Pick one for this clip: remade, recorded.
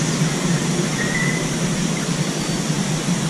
recorded